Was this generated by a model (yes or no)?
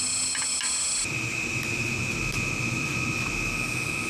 no